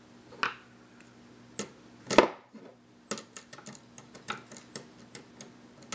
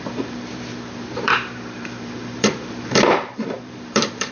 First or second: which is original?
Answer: first